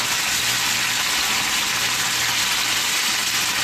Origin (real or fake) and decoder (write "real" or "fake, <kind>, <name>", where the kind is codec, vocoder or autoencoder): real